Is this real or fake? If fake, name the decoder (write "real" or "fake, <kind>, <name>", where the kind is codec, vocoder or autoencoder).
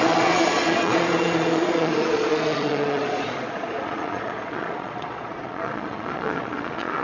fake, vocoder, Vocos